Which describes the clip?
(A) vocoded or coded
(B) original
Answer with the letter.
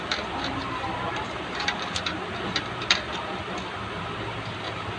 A